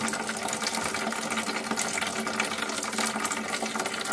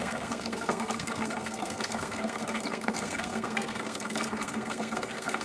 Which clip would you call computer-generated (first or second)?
second